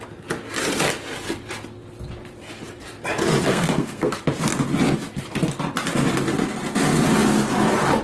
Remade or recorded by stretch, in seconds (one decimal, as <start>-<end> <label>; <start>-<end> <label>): 0.0-3.5 recorded; 3.5-4.2 remade; 4.2-8.0 recorded